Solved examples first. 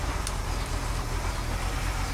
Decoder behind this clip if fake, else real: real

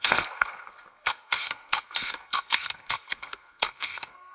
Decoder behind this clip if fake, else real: fake, codec, SNAC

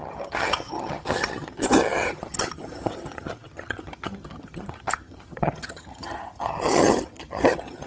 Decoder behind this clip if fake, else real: fake, vocoder, HiFi-GAN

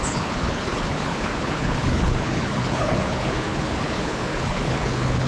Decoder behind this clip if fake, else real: fake, codec, HILCodec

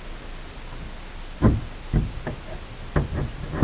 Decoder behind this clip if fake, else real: real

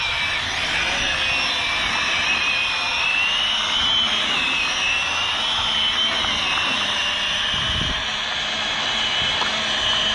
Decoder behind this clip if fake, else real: real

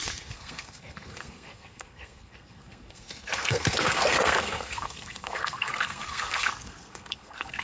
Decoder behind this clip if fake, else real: fake, codec, SNAC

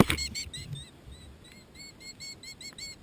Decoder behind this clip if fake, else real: real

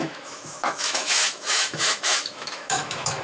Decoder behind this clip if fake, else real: fake, autoencoder, DAC-VAE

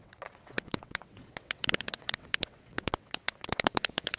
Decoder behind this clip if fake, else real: fake, vocoder, WaveNeXt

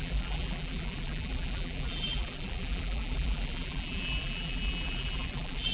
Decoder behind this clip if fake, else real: fake, vocoder, BigVGAN v2